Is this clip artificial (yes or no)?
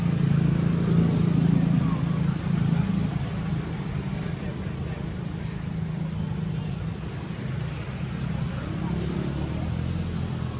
no